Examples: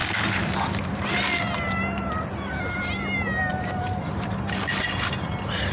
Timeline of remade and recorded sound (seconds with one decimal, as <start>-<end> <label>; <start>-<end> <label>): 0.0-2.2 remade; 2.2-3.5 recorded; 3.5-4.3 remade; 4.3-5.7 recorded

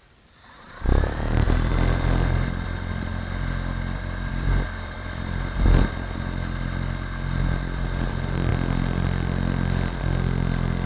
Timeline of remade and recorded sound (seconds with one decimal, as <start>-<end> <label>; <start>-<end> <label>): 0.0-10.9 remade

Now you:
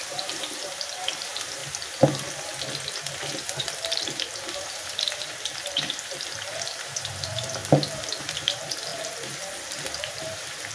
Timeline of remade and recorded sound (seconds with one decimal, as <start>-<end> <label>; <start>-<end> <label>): 0.0-1.6 remade; 1.6-3.6 recorded; 3.6-7.6 remade; 7.6-8.2 recorded; 8.2-8.9 remade; 8.9-10.0 recorded; 10.0-10.7 remade

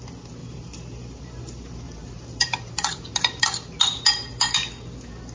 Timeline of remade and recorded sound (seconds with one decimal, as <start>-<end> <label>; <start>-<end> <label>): 0.0-0.4 recorded; 0.4-3.4 remade; 3.4-5.3 recorded

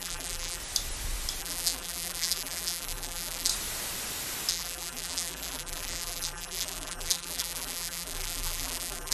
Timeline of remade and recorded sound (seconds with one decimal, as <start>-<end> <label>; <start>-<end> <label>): 0.0-0.6 remade; 0.6-1.4 recorded; 1.4-3.5 remade; 3.5-4.5 recorded; 4.5-9.1 remade

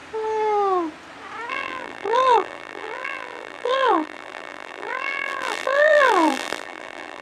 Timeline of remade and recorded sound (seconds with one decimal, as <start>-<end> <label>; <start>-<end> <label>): 0.0-1.5 recorded; 1.5-7.2 remade

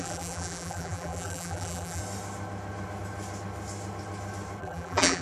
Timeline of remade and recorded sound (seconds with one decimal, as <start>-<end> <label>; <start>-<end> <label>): 0.0-2.0 remade; 2.0-4.6 recorded; 4.6-5.2 remade

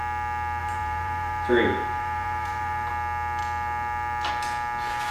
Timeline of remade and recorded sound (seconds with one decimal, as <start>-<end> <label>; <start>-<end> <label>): 0.0-0.6 recorded; 0.6-2.9 remade; 2.9-5.1 recorded